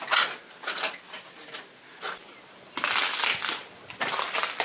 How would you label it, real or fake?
real